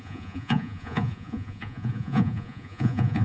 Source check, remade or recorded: remade